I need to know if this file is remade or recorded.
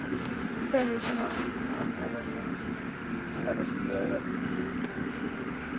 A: remade